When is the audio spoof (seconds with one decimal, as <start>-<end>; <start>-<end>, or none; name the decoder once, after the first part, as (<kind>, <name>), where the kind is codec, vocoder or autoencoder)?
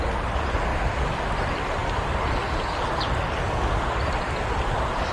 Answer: none